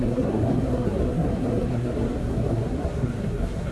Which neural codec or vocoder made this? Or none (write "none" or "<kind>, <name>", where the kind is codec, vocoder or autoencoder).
codec, SNAC